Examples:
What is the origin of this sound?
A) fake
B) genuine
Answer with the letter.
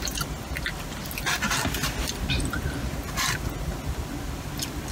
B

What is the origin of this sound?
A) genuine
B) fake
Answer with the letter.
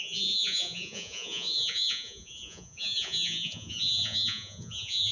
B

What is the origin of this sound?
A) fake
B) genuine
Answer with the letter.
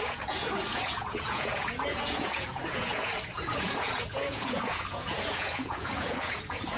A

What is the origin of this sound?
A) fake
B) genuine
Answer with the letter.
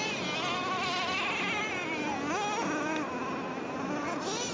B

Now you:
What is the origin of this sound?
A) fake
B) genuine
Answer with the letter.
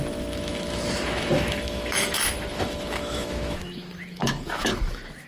A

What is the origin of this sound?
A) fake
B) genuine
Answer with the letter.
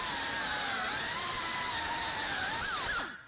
B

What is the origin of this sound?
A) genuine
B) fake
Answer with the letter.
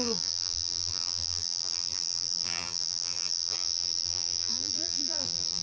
B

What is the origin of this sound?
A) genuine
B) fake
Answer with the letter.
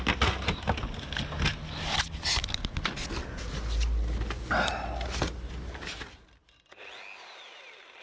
A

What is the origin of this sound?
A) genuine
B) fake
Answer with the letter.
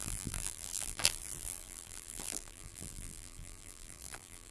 B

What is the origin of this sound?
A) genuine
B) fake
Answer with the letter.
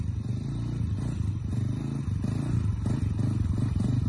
A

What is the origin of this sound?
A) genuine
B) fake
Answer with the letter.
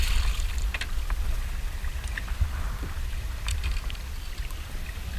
A